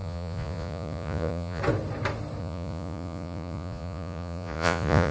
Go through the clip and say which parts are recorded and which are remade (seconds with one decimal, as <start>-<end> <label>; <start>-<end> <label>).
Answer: 0.0-1.6 remade; 1.6-2.4 recorded; 2.4-5.1 remade